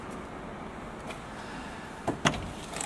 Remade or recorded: recorded